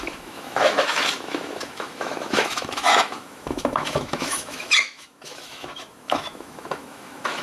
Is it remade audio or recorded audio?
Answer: remade